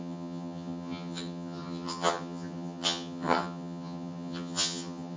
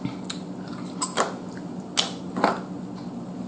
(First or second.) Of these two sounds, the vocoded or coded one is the first